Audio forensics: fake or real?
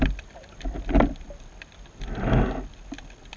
real